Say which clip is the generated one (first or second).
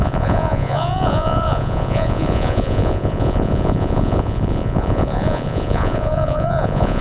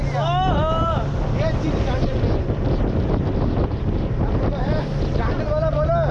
first